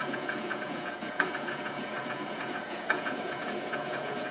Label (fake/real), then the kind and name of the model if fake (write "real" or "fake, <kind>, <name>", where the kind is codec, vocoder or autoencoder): fake, vocoder, Vocos